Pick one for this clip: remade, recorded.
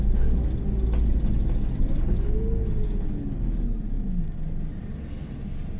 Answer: recorded